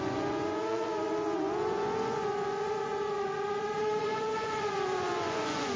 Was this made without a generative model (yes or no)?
no